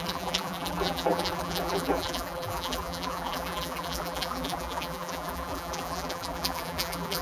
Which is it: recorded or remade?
remade